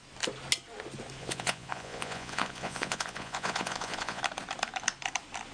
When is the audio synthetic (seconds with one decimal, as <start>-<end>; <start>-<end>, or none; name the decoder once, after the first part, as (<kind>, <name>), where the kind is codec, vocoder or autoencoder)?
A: 1.2-4.2 (vocoder, Vocos)